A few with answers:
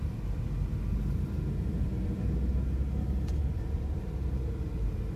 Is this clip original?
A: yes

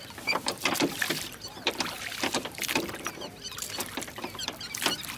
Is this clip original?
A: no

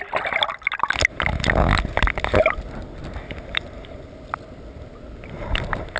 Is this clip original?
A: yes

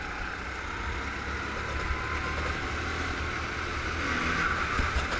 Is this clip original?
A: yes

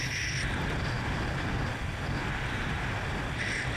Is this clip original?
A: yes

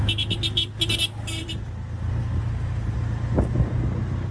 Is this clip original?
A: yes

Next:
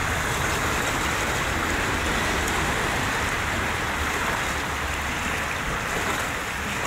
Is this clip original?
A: yes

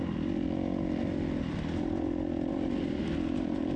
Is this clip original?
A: yes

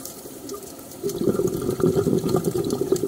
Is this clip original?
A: no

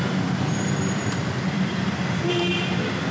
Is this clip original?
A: no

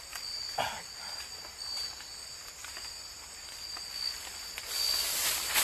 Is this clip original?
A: yes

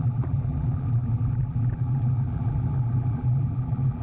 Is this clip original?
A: no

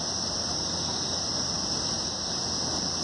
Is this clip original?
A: yes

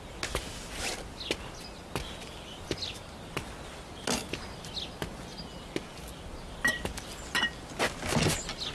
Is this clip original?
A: yes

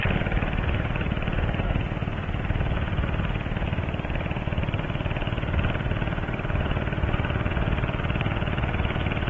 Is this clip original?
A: no